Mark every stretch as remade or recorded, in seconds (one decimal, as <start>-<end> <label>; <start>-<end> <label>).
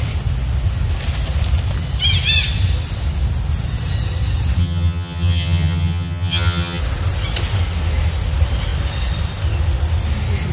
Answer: 0.0-4.6 recorded; 4.6-6.8 remade; 6.8-10.5 recorded